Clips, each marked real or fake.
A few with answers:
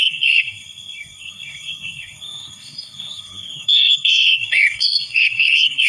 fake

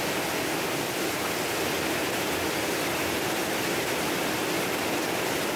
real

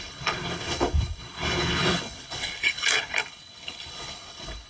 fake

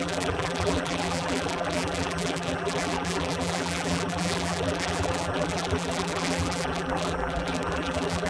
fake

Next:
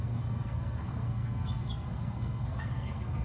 fake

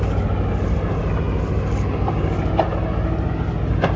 real